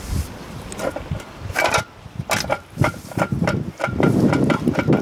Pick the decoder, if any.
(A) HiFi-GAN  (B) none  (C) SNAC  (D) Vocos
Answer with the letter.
B